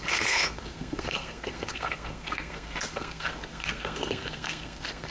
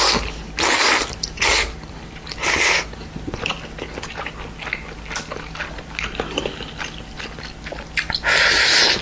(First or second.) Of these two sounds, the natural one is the second